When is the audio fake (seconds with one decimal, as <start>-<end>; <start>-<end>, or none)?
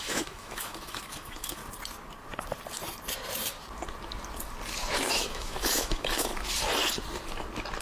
0.0-1.6; 5.1-6.3